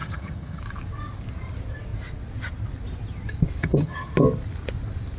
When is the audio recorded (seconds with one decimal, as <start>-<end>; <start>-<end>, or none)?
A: 0.6-3.6; 4.1-5.2